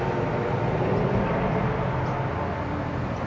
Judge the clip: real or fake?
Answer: real